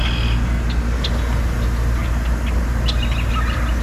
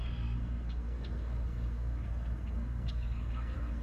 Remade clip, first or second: second